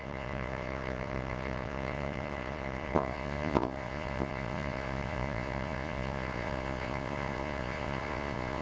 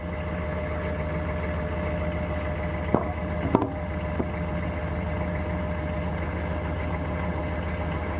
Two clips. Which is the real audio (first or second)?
second